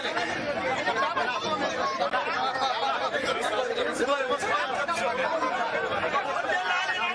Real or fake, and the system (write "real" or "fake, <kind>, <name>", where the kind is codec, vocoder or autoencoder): real